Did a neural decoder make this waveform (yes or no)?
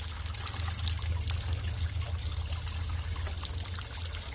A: no